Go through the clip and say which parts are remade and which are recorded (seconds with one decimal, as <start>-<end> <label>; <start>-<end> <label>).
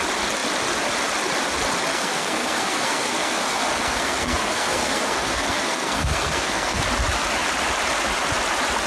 0.0-1.9 recorded; 1.9-6.8 remade; 6.8-8.9 recorded